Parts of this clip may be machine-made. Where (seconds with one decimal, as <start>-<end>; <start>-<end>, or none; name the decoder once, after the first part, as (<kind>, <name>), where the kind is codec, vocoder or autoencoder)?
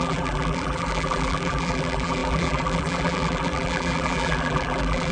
0.0-5.1 (vocoder, BigVGAN v2)